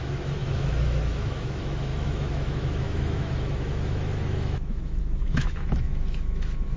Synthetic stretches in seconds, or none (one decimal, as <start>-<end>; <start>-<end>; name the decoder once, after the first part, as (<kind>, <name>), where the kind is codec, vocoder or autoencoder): 0.0-6.8 (autoencoder, DAC-VAE)